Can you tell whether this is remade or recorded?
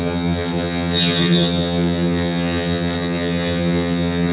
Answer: remade